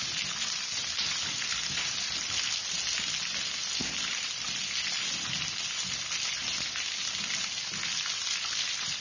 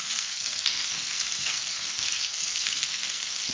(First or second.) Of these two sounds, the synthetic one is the second